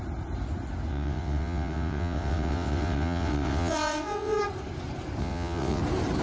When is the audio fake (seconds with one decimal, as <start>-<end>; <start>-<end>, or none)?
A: 0.9-4.4; 5.2-5.8